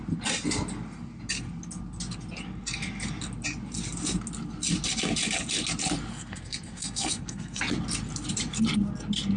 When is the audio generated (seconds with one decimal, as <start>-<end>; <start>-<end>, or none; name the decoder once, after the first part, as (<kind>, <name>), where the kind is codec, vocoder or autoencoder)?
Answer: 6.1-7.6 (codec, SNAC)